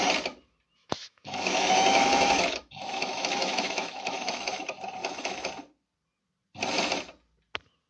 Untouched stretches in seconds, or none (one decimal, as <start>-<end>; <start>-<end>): 0.0-0.8; 4.6-5.0; 5.5-7.9